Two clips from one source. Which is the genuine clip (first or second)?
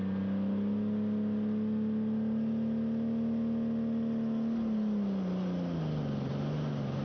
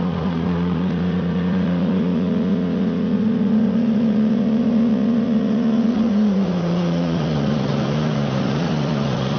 first